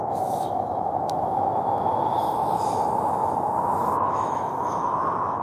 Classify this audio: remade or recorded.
remade